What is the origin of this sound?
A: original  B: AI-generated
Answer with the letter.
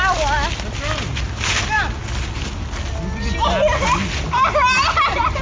A